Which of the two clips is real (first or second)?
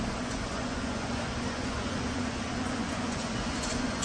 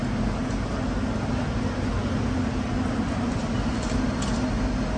second